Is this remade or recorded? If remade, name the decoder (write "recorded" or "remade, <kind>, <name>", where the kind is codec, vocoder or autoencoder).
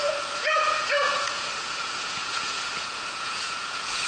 remade, vocoder, Vocos